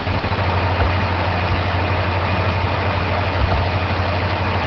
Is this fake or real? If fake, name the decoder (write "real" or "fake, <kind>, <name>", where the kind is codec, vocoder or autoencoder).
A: real